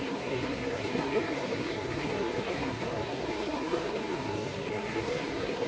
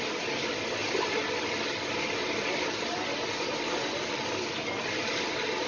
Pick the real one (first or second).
second